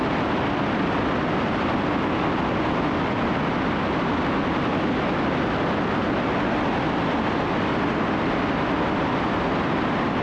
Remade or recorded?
recorded